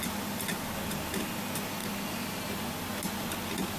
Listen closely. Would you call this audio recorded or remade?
recorded